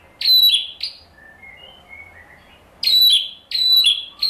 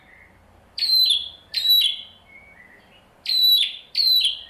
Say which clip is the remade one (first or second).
second